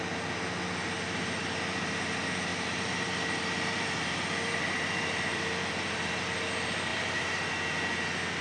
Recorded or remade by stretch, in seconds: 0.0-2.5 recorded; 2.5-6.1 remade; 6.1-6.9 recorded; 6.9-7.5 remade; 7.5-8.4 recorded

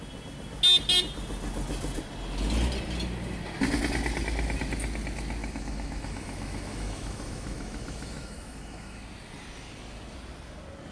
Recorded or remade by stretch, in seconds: 0.0-5.4 recorded; 5.4-9.0 remade; 9.0-10.9 recorded

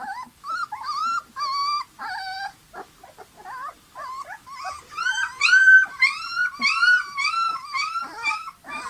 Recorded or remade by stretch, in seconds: 0.0-1.0 remade; 1.0-3.7 recorded; 3.7-8.9 remade

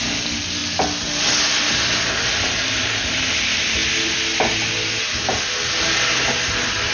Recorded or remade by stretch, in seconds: 0.0-6.9 recorded

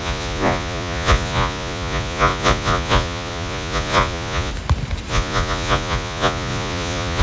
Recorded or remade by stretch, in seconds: 0.0-4.5 remade; 4.5-5.1 recorded; 5.1-7.2 remade

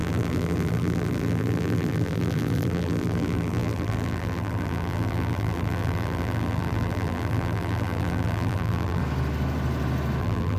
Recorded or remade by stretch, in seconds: 0.0-9.0 remade; 9.0-10.2 recorded; 10.2-10.6 remade

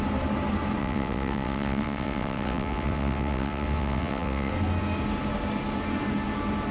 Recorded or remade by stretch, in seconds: 0.0-0.8 recorded; 0.8-4.5 remade; 4.5-6.7 recorded

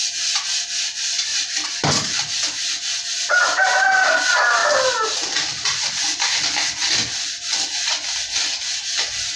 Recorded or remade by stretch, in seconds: 0.0-1.3 recorded; 1.3-2.2 remade; 2.2-4.6 recorded; 4.6-8.7 remade; 8.7-9.4 recorded